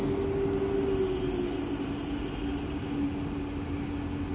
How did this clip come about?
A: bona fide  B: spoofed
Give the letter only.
A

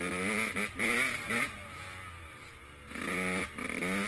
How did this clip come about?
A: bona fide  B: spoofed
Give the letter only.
A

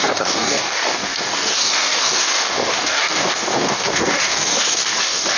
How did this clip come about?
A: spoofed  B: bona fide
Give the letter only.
A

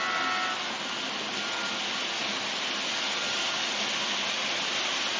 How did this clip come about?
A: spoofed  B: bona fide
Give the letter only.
B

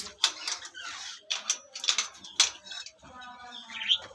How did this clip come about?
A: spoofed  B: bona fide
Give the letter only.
B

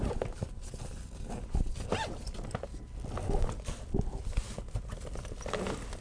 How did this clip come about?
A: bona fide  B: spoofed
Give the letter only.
A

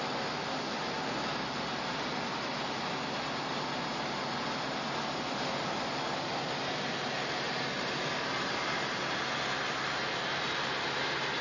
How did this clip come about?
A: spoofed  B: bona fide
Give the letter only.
B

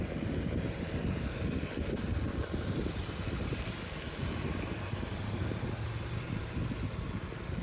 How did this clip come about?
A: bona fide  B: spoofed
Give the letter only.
B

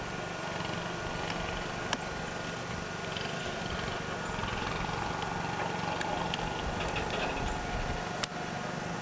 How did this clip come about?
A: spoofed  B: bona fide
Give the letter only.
B